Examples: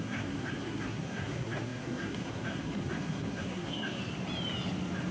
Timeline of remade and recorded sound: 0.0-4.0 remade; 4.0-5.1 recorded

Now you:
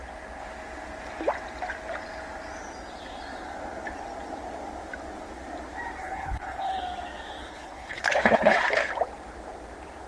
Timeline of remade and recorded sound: 0.0-6.0 recorded; 6.0-6.8 remade; 6.8-7.4 recorded; 7.4-8.9 remade; 8.9-10.1 recorded

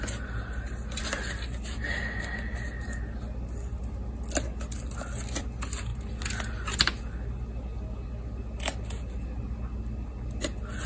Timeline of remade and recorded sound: 0.0-10.9 recorded

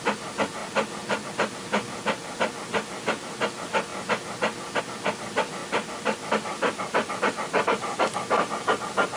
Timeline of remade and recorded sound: 0.0-5.6 recorded; 5.6-7.2 remade; 7.2-9.2 recorded

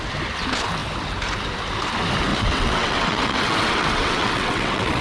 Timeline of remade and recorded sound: 0.0-2.3 recorded; 2.3-5.0 remade

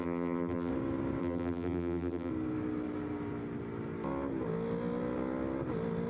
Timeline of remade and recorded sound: 0.0-0.7 remade; 0.7-1.2 recorded; 1.2-2.3 remade; 2.3-6.1 recorded